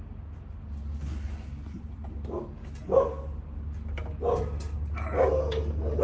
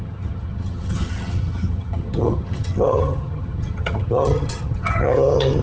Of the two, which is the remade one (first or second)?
second